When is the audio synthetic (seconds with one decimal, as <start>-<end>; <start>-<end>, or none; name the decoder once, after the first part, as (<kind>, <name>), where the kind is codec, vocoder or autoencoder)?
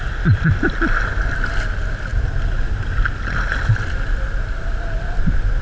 none